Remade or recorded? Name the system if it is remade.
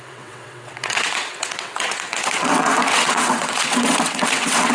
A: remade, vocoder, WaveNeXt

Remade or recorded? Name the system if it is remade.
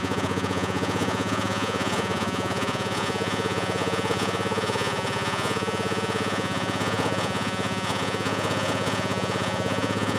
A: remade, vocoder, Vocos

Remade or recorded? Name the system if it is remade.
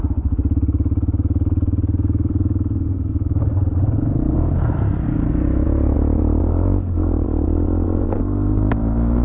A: remade, vocoder, BigVGAN v2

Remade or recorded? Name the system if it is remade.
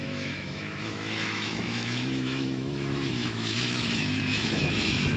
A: remade, autoencoder, DAC-VAE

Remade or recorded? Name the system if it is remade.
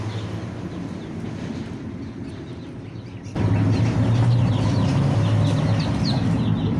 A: recorded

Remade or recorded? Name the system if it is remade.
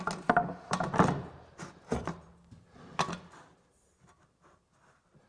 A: recorded